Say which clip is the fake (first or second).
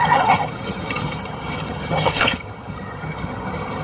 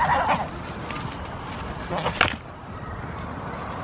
first